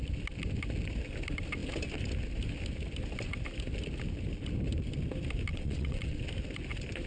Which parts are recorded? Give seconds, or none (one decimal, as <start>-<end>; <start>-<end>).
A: 0.0-5.5; 6.2-7.1